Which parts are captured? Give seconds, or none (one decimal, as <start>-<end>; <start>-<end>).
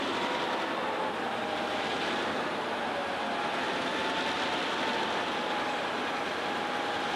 0.0-7.2